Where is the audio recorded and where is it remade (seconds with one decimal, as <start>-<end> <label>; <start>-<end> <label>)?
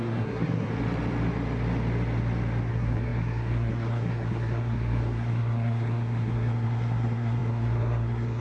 0.0-0.7 remade; 0.7-2.7 recorded; 2.7-8.4 remade